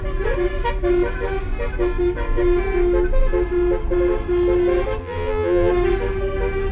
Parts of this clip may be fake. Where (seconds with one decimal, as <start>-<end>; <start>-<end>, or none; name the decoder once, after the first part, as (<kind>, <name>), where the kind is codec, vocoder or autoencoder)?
5.0-5.7 (vocoder, BigVGAN v2)